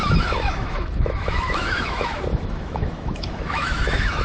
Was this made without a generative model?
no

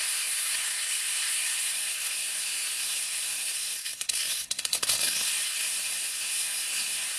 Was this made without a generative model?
no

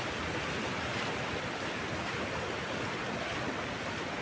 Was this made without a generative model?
yes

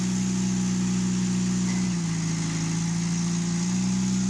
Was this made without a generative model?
yes